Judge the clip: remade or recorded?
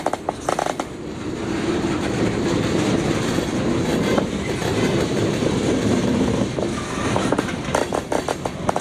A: remade